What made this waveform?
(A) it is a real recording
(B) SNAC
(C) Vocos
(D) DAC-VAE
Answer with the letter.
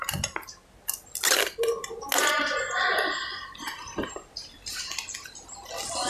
A